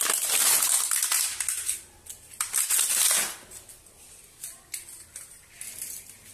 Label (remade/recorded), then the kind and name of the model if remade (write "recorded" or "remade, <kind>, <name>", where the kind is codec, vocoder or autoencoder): recorded